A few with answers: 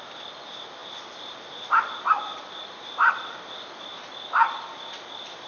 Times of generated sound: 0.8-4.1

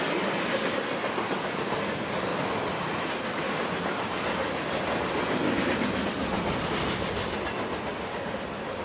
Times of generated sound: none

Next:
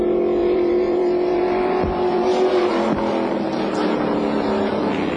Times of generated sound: 0.4-2.7

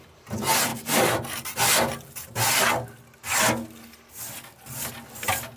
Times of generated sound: none

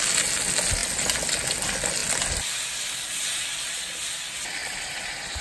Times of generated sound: 4.6-5.4

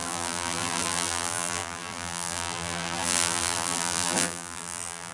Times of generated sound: 0.0-5.1

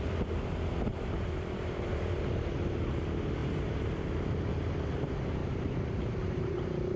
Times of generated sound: 0.9-1.9; 3.4-4.5; 5.4-6.6